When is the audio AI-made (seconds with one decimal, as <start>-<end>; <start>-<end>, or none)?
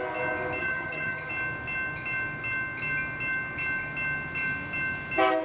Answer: 0.6-1.3